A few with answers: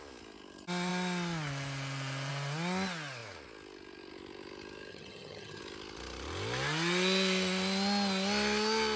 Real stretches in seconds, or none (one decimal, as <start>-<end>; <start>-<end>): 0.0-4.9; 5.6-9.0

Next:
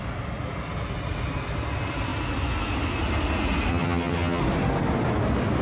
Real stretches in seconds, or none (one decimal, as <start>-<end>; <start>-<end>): 0.0-3.7; 4.4-5.6

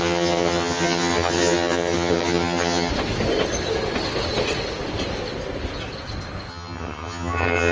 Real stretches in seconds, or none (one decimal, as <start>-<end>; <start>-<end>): 2.9-6.5

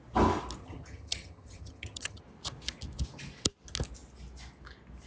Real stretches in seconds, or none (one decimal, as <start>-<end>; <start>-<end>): 0.0-0.6; 2.2-5.1

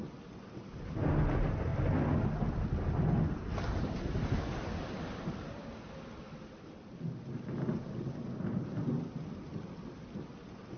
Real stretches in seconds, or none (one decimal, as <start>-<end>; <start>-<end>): 0.0-10.8

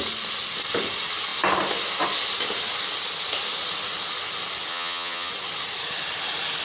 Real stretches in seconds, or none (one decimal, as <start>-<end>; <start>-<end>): 0.0-4.7; 5.3-6.6